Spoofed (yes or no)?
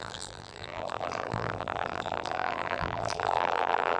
yes